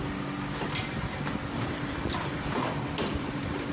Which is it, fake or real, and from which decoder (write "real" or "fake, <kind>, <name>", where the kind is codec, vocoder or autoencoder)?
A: fake, vocoder, BigVGAN v2